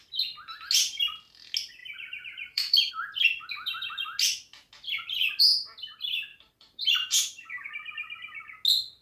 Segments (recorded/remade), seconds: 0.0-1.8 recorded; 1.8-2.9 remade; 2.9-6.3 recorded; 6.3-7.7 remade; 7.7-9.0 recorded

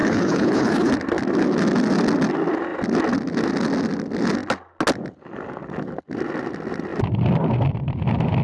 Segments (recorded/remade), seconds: 0.0-0.9 remade; 0.9-8.4 recorded

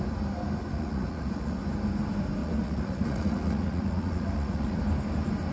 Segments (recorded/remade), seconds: 0.0-0.7 recorded; 0.7-1.6 remade; 1.6-2.4 recorded; 2.4-4.8 remade; 4.8-5.5 recorded